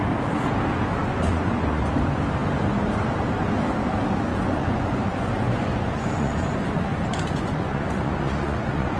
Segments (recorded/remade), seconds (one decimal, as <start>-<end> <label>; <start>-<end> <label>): 0.0-1.0 recorded; 1.0-1.8 remade; 1.8-4.3 recorded; 4.3-9.0 remade